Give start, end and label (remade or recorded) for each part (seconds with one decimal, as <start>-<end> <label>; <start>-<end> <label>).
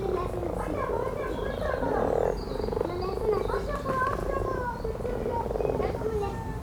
0.0-6.6 recorded